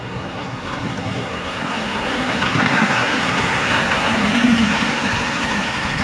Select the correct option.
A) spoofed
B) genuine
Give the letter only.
A